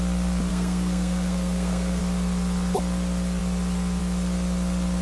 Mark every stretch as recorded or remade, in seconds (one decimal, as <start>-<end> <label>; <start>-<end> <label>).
0.0-0.5 recorded; 0.5-2.0 remade; 2.0-5.0 recorded